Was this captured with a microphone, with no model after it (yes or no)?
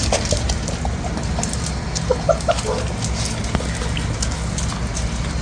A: yes